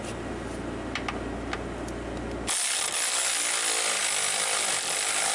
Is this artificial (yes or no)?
no